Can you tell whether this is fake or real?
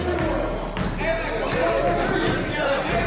real